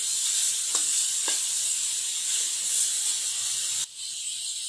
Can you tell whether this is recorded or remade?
recorded